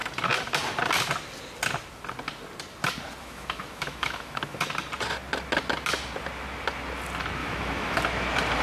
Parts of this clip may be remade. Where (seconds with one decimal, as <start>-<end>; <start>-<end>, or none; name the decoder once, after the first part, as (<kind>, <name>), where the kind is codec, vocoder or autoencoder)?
3.2-4.6 (autoencoder, DAC-VAE); 7.4-8.0